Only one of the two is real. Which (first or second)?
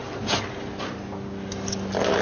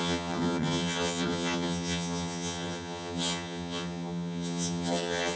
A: first